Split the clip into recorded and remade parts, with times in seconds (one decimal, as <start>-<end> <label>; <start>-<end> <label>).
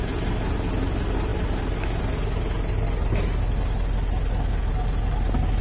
0.0-5.6 recorded